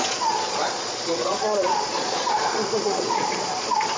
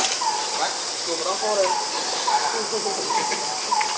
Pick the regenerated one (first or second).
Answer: first